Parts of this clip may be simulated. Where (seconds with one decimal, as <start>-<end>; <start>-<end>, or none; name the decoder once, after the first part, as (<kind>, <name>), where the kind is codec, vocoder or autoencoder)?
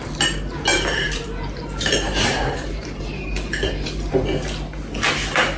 0.7-4.1 (vocoder, BigVGAN v2)